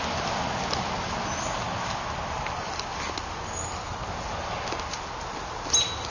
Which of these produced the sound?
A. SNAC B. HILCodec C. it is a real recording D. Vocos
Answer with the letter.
C